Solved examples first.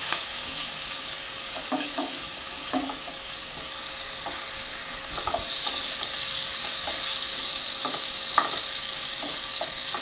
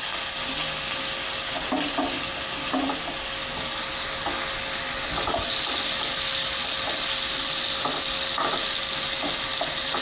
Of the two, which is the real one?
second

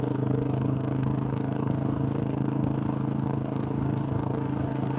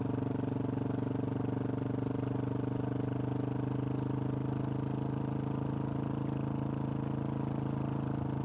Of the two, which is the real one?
second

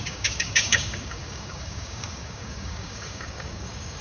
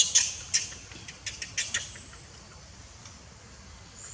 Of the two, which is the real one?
second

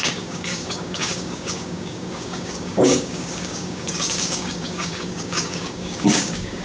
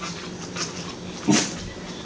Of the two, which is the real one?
second